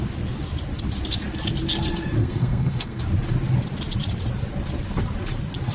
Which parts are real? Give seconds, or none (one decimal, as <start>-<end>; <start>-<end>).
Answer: 0.0-2.2; 3.0-5.7